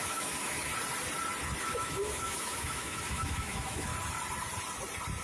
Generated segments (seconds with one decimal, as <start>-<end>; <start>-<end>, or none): 0.0-0.7; 1.6-3.9